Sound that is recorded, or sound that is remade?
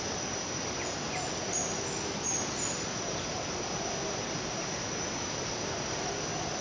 recorded